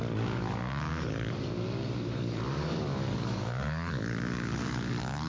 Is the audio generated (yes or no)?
yes